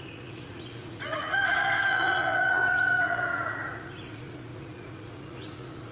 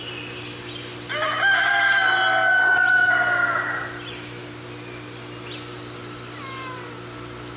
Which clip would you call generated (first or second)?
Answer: first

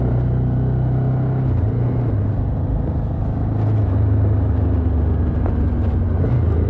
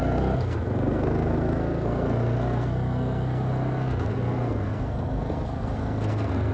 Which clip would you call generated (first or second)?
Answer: second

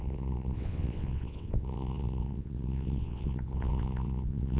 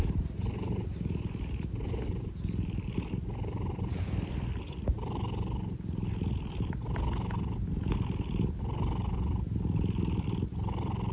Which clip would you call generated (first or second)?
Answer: first